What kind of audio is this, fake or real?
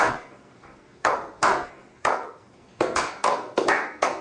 fake